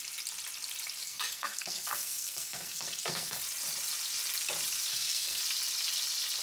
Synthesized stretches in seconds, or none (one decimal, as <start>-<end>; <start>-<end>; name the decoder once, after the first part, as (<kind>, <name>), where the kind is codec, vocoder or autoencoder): 1.0-3.4 (codec, SNAC); 4.9-5.4